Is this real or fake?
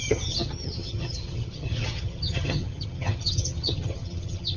fake